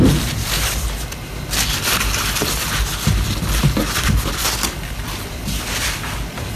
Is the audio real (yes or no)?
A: no